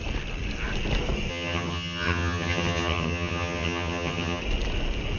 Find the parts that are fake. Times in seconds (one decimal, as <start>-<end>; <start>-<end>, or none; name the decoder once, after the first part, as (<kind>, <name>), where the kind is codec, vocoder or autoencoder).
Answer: 1.3-4.4 (vocoder, HiFi-GAN)